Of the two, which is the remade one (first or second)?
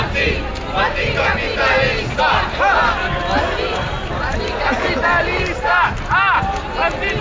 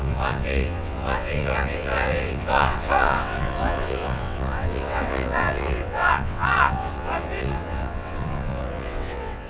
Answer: second